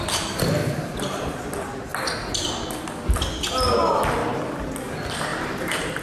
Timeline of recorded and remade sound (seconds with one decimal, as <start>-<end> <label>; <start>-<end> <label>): 0.0-0.6 recorded; 0.6-1.3 remade; 1.3-6.0 recorded